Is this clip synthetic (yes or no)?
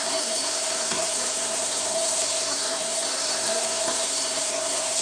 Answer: yes